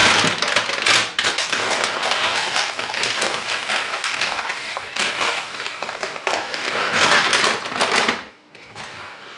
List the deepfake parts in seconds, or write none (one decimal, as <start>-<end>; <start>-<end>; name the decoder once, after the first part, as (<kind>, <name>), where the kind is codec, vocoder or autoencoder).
1.3-7.3 (codec, DAC); 8.3-9.4